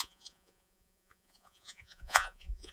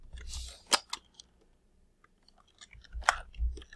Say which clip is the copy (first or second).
first